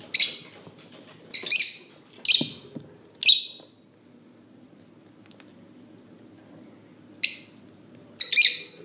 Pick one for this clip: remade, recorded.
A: recorded